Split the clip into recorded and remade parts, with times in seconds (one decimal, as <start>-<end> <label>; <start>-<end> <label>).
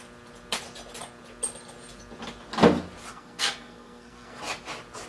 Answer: 0.0-3.1 recorded; 3.1-4.4 remade; 4.4-5.1 recorded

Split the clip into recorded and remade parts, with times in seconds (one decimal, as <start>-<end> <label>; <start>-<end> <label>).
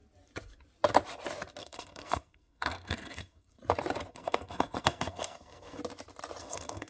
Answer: 0.0-1.6 recorded; 1.6-3.6 remade; 3.6-4.1 recorded; 4.1-5.8 remade; 5.8-6.4 recorded; 6.4-6.9 remade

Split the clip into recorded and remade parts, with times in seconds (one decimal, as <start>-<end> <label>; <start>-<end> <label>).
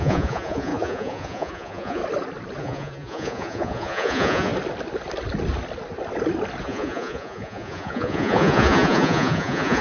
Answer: 0.0-2.0 remade; 2.0-2.6 recorded; 2.6-4.5 remade; 4.5-6.6 recorded; 6.6-9.8 remade